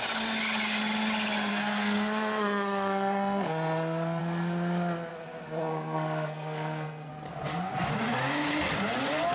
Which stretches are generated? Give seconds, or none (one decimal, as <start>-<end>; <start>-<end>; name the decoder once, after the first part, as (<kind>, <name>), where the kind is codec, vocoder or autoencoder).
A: 1.5-4.2 (codec, SNAC); 5.1-7.1